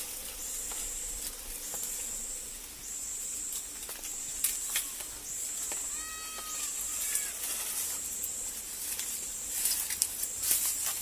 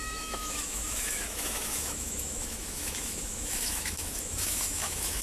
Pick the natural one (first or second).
first